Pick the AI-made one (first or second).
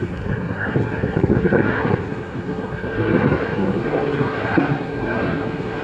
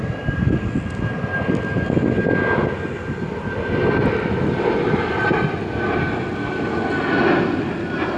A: first